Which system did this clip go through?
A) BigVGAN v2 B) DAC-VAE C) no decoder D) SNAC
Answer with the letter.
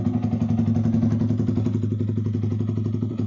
C